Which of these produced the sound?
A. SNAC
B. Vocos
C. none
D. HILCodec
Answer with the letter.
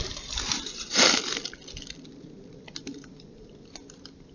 C